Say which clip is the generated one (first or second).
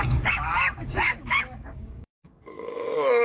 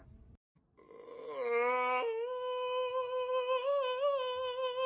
first